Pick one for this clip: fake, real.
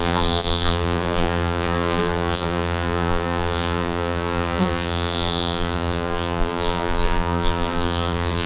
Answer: fake